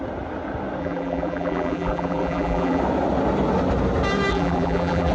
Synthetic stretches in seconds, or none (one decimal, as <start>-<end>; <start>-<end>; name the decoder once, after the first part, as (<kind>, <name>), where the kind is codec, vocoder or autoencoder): 0.8-2.8 (vocoder, BigVGAN v2); 4.3-5.1